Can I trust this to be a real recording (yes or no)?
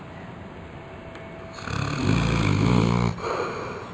yes